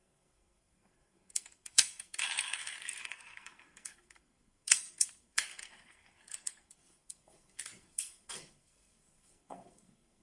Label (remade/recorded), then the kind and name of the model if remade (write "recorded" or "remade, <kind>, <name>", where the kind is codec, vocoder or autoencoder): remade, codec, SNAC